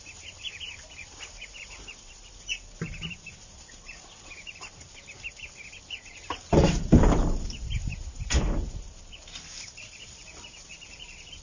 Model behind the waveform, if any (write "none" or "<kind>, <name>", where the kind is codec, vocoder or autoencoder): none